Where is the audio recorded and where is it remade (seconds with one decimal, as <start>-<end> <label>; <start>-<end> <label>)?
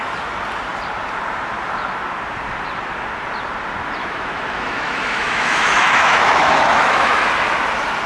0.0-4.0 recorded; 4.0-7.3 remade; 7.3-8.1 recorded